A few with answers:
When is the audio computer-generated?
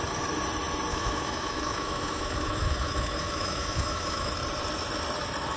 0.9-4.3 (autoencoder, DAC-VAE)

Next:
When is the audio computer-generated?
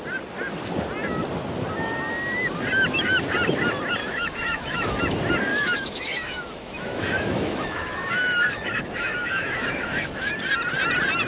4.0-5.0 (autoencoder, DAC-VAE); 5.5-10.3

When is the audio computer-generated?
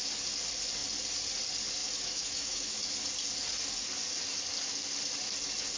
1.8-2.9 (autoencoder, DAC-VAE)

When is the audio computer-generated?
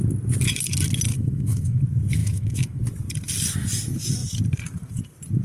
1.1-1.8 (autoencoder, DAC-VAE); 2.2-2.8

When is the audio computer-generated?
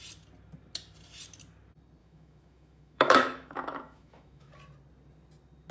2.0-4.5 (autoencoder, DAC-VAE)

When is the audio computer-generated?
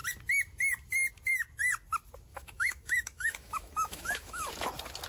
2.3-4.5 (autoencoder, DAC-VAE)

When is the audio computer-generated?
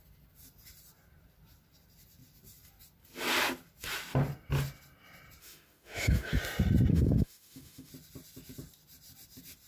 5.4-6.4 (autoencoder, DAC-VAE); 6.9-7.9